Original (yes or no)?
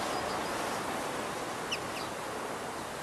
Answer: yes